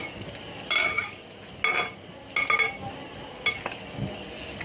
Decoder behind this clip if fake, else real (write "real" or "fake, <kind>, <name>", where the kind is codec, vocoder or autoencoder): real